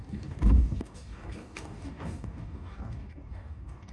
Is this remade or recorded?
remade